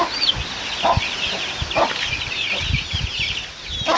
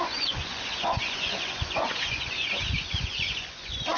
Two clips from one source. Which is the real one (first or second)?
first